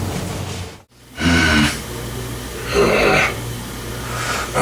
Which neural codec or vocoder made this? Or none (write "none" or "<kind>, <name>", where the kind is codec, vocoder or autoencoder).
vocoder, BigVGAN v2